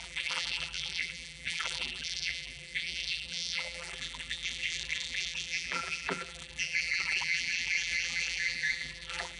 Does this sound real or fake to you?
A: fake